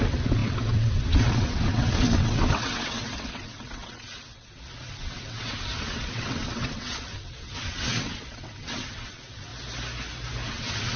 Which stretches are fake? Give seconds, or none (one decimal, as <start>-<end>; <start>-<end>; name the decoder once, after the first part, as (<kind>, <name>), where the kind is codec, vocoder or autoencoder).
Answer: 0.0-9.5 (vocoder, WaveNeXt); 10.5-11.0